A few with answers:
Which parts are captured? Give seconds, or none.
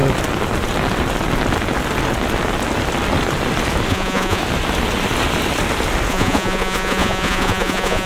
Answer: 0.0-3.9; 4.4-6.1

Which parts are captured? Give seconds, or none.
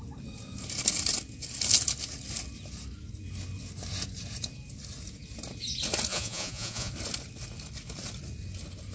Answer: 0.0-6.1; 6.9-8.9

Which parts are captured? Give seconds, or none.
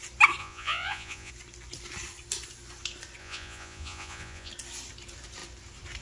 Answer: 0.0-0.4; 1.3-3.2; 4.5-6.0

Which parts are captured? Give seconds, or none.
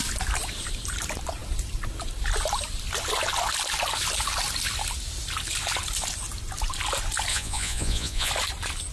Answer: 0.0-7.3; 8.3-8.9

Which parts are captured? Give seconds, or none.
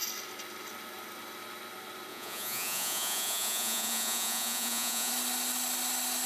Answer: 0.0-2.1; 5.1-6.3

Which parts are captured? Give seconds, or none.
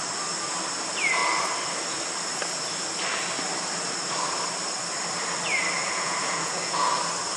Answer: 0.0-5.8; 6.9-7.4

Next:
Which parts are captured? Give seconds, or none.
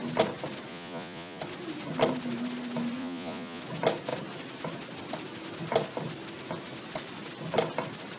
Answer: 0.0-0.7; 1.4-3.0; 3.6-8.2